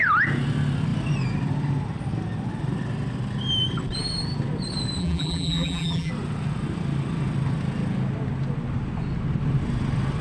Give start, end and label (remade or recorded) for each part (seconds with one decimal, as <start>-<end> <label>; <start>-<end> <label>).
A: 0.0-5.0 recorded; 5.0-6.1 remade; 6.1-10.2 recorded